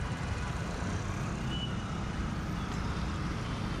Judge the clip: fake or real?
fake